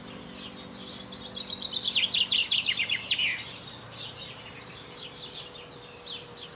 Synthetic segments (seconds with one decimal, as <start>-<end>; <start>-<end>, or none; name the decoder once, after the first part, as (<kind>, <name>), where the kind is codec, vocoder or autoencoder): 2.4-5.5 (vocoder, BigVGAN v2)